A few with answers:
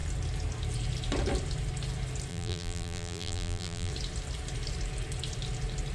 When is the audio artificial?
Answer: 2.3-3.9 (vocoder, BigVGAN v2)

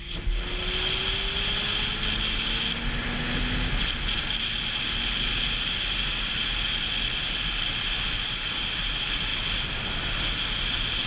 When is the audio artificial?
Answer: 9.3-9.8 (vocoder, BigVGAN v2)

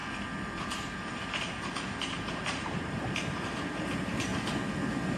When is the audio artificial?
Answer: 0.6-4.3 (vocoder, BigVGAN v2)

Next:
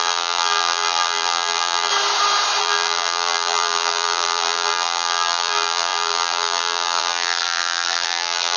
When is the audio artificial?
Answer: 0.0-1.9 (vocoder, BigVGAN v2); 2.6-8.6

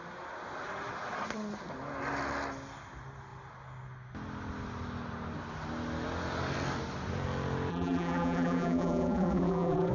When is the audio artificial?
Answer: 7.7-9.9 (vocoder, BigVGAN v2)

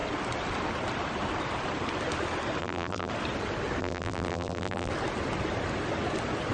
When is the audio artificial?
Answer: 2.6-3.1 (vocoder, BigVGAN v2); 3.8-4.9